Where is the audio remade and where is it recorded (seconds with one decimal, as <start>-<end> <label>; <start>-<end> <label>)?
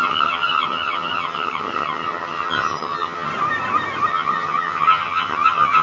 0.0-3.3 remade; 3.3-4.1 recorded; 4.1-5.8 remade